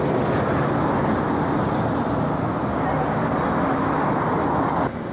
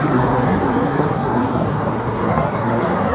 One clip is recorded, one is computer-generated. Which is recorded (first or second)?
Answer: first